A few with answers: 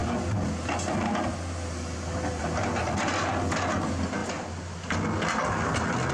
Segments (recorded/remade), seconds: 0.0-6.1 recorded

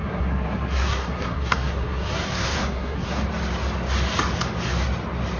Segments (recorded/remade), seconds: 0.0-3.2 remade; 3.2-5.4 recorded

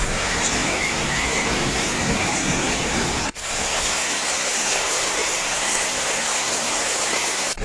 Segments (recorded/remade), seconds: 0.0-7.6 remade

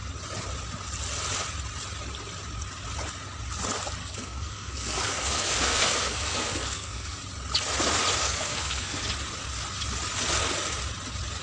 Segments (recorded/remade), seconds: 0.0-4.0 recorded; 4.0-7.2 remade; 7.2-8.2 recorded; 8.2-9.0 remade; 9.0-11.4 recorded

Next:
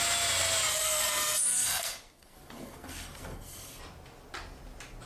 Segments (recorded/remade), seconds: 0.0-0.7 recorded; 0.7-3.8 remade; 3.8-5.1 recorded

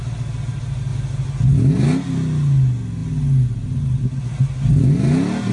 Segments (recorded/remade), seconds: 0.0-5.5 recorded

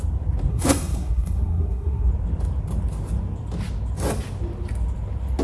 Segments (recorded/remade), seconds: 0.0-0.5 recorded; 0.5-2.1 remade; 2.1-5.4 recorded

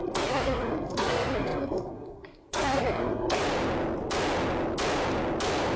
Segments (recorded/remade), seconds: 0.0-3.4 remade; 3.4-5.8 recorded